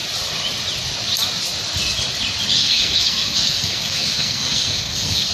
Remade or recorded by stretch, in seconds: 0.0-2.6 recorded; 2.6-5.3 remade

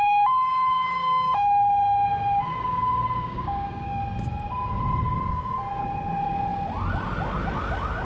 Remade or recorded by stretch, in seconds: 0.0-1.0 recorded; 1.0-4.0 remade; 4.0-8.0 recorded

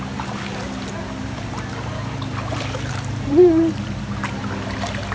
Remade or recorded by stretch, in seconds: 0.0-1.2 recorded; 1.2-4.0 remade; 4.0-5.1 recorded

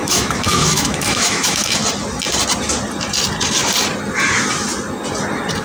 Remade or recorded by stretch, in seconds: 0.0-1.8 remade; 1.8-5.6 recorded

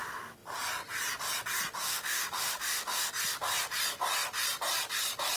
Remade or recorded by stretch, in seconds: 0.0-1.8 recorded; 1.8-3.1 remade; 3.1-5.4 recorded

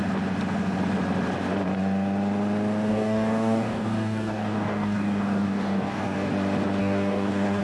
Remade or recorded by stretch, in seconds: 0.0-2.9 recorded; 2.9-6.3 remade; 6.3-6.8 recorded; 6.8-7.6 remade